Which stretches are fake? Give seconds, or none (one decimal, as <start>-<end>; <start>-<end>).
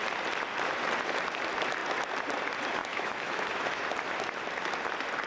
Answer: 2.8-3.8